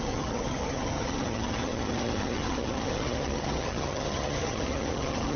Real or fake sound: fake